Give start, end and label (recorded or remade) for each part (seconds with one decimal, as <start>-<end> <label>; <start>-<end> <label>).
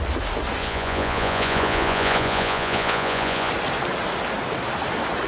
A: 0.0-0.6 recorded; 0.6-3.5 remade; 3.5-5.3 recorded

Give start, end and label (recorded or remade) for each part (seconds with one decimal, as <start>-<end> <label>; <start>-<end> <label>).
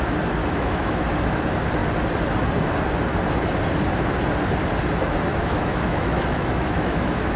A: 0.0-0.4 recorded; 0.4-1.0 remade; 1.0-5.3 recorded; 5.3-7.4 remade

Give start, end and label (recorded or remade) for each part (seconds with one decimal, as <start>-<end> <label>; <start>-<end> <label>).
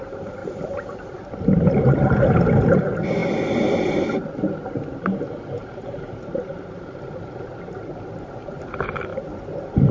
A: 0.0-0.4 remade; 0.4-1.6 recorded; 1.6-3.2 remade; 3.2-4.8 recorded; 4.8-9.1 remade; 9.1-9.9 recorded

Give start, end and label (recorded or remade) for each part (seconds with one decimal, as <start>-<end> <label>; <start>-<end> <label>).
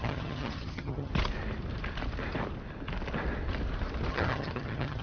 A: 0.0-1.1 remade; 1.1-4.1 recorded; 4.1-5.0 remade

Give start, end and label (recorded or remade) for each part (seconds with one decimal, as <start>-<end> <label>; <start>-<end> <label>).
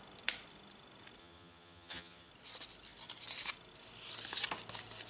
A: 0.0-1.2 recorded; 1.2-2.3 remade; 2.3-5.1 recorded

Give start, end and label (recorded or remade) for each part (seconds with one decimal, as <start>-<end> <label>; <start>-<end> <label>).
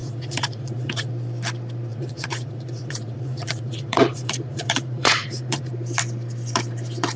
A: 0.0-1.1 remade; 1.1-1.9 recorded; 1.9-5.7 remade; 5.7-7.2 recorded